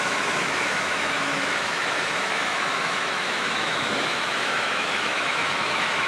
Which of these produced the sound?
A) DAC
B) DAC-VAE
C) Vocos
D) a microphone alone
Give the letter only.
B